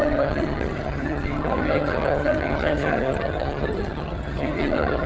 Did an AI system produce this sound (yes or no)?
yes